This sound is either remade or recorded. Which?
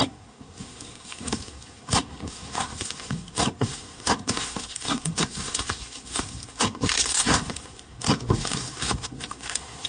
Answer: remade